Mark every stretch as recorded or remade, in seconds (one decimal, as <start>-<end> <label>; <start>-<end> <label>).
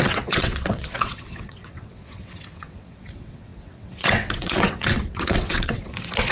0.0-6.3 remade